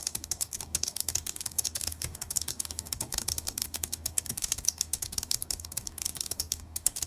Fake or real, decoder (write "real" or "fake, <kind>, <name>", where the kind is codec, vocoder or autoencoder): fake, codec, DAC